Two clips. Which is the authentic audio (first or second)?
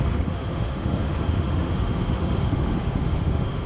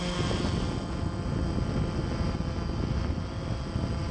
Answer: second